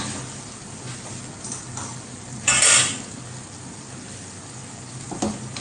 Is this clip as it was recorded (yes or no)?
yes